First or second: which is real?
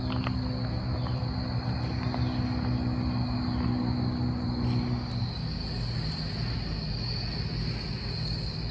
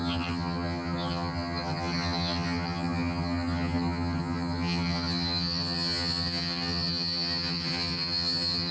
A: first